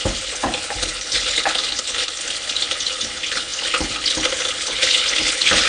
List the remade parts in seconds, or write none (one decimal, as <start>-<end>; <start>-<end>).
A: 0.0-5.7